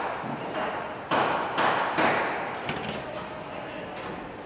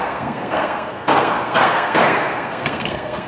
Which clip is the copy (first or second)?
second